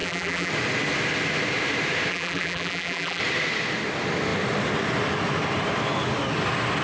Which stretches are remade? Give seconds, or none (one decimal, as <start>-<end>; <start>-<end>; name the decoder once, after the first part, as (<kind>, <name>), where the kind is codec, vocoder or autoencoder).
0.0-0.5 (vocoder, BigVGAN v2); 2.1-3.2